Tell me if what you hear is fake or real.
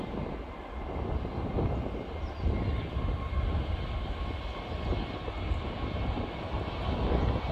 real